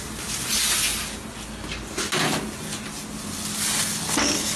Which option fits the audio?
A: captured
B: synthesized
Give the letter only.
A